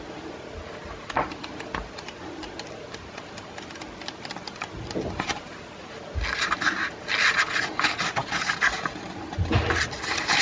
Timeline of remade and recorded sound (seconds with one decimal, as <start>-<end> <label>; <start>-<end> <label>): 0.0-10.4 recorded

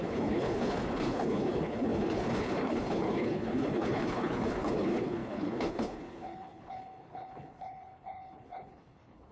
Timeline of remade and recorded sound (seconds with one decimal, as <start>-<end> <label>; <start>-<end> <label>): 0.0-9.3 remade

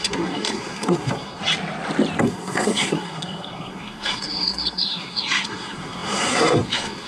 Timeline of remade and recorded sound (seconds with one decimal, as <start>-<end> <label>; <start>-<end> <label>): 0.0-1.4 remade; 1.4-2.2 recorded; 2.2-7.1 remade

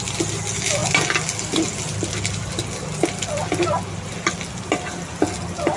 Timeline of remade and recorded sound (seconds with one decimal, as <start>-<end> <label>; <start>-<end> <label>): 0.0-5.8 recorded

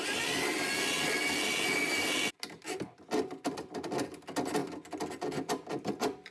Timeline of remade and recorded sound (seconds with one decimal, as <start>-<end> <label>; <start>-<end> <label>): 0.0-6.3 recorded

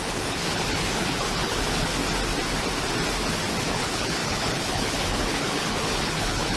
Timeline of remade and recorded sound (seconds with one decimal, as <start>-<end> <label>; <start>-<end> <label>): 0.0-1.9 remade; 1.9-3.6 recorded; 3.6-6.6 remade